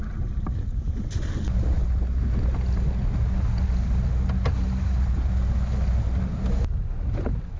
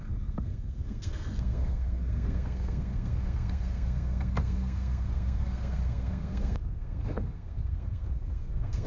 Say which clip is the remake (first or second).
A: second